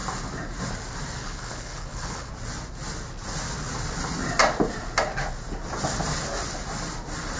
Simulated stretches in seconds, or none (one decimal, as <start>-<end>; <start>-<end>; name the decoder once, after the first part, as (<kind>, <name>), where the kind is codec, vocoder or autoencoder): 1.2-2.3 (codec, HILCodec)